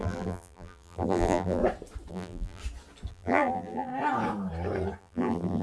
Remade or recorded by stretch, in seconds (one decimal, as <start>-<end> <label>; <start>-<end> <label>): 0.0-1.6 remade; 1.6-2.1 recorded; 2.1-2.6 remade; 2.6-3.1 recorded; 3.1-3.9 remade; 3.9-5.0 recorded; 5.0-5.6 remade